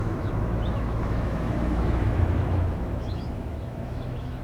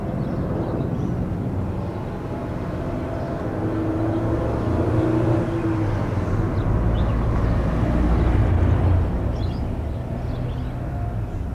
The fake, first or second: first